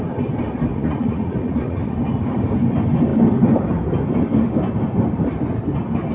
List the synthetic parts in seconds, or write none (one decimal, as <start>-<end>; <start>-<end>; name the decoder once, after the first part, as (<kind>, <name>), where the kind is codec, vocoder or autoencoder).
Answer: 0.7-1.9 (vocoder, Vocos)

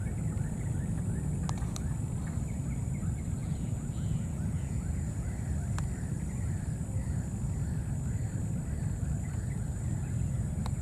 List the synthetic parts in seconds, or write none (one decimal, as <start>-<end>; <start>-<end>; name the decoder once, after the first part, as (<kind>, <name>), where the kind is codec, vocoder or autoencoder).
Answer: 3.4-5.3 (vocoder, Vocos)

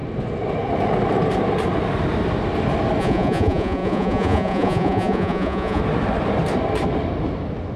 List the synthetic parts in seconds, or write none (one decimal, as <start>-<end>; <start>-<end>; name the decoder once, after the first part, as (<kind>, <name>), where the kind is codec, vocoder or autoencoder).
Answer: 3.0-5.8 (vocoder, Vocos)

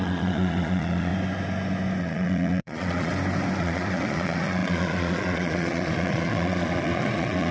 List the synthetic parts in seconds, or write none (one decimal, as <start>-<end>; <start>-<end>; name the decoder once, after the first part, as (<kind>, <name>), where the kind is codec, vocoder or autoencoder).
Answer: 0.0-1.1 (vocoder, Vocos); 2.0-3.1; 3.6-7.5